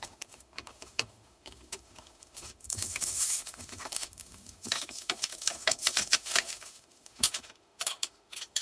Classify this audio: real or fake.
fake